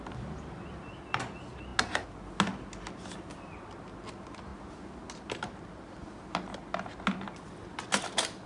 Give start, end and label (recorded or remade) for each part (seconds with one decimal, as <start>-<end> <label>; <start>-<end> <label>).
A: 0.0-8.5 recorded